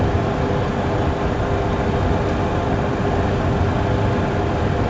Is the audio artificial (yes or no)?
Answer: no